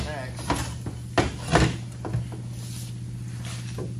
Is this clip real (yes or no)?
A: yes